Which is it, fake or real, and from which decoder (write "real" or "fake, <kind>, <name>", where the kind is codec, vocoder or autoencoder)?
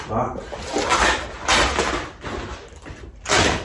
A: real